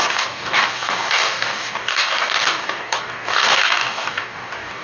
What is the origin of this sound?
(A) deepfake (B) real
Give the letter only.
A